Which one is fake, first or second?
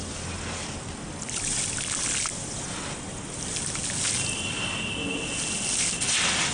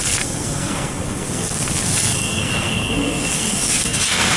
second